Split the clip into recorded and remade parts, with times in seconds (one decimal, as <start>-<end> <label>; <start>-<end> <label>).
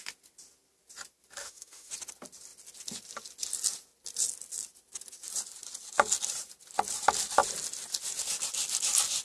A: 0.0-1.4 recorded; 1.4-1.9 remade; 1.9-9.2 recorded